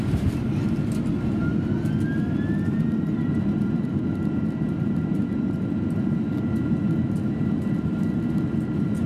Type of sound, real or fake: real